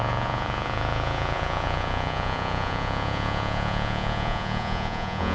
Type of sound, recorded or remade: remade